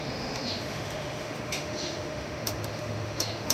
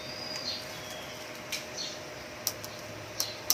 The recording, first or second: second